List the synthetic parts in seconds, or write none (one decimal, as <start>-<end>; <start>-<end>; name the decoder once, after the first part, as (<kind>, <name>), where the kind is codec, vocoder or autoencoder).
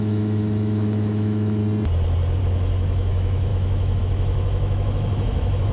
0.0-1.6 (autoencoder, DAC-VAE); 2.4-5.7